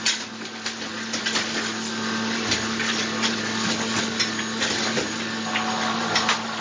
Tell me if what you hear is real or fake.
real